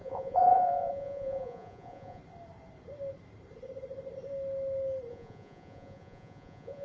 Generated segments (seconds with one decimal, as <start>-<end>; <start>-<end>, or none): 0.0-2.2; 5.1-6.8